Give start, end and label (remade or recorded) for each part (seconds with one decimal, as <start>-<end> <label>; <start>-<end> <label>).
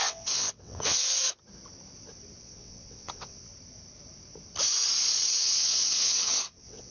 0.0-1.2 remade; 1.2-2.4 recorded; 2.4-3.5 remade; 3.5-5.3 recorded; 5.3-6.9 remade